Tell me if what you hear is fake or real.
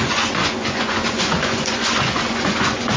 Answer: fake